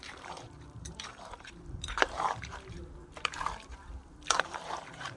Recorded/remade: remade